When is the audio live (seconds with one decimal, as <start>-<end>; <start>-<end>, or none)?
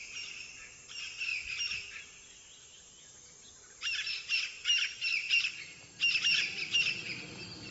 0.0-7.7